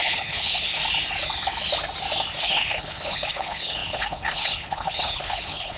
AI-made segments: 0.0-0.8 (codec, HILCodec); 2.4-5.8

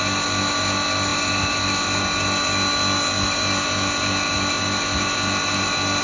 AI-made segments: none

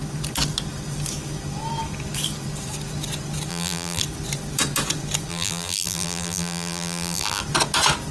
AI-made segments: 3.5-4.0 (vocoder, BigVGAN v2); 5.3-7.4

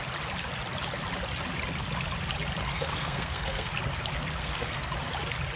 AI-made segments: 2.6-3.7 (codec, SNAC); 4.4-4.9